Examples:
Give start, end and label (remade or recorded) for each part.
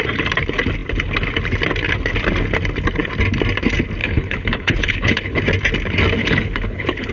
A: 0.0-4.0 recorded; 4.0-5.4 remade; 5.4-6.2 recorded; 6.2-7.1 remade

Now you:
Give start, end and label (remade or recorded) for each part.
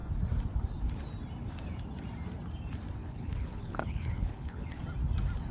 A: 0.0-3.0 recorded; 3.0-4.8 remade; 4.8-5.5 recorded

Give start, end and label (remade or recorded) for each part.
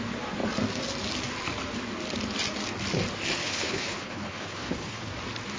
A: 0.0-3.4 recorded; 3.4-5.1 remade; 5.1-5.6 recorded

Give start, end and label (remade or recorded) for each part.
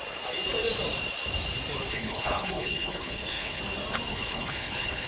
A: 0.0-1.9 recorded; 1.9-3.6 remade; 3.6-4.1 recorded; 4.1-5.1 remade